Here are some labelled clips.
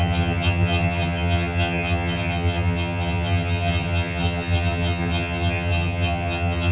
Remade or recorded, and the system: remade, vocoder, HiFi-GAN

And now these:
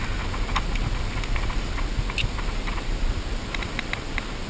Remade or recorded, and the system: recorded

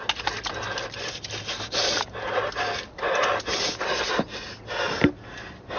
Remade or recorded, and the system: recorded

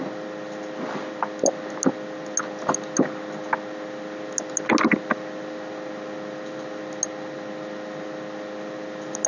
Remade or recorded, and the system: recorded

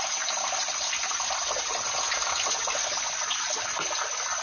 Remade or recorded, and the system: recorded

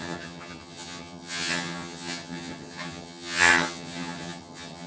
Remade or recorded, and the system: remade, vocoder, HiFi-GAN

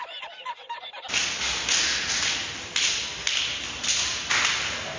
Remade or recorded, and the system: recorded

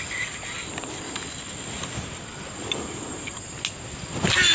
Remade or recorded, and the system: recorded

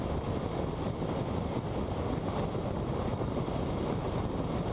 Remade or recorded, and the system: recorded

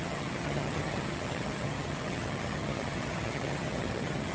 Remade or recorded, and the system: remade, vocoder, HiFi-GAN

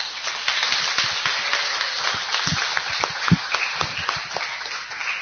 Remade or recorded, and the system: recorded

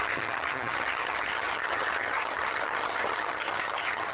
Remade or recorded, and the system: remade, vocoder, HiFi-GAN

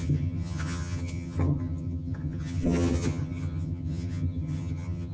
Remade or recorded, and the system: remade, vocoder, HiFi-GAN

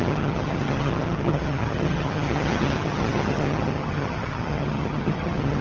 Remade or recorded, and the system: remade, vocoder, HiFi-GAN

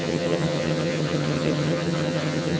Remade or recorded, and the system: remade, vocoder, HiFi-GAN